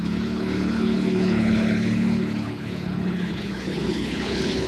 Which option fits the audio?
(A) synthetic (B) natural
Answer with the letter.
A